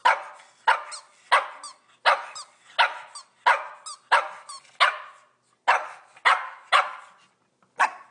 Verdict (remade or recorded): recorded